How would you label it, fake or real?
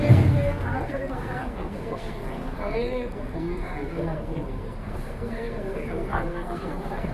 fake